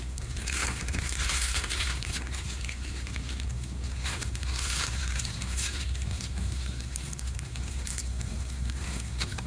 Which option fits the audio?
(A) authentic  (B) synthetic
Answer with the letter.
B